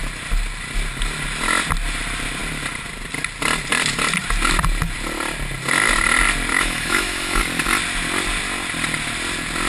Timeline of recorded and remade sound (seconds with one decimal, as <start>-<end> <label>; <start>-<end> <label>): 0.0-6.5 recorded; 6.5-7.4 remade; 7.4-9.7 recorded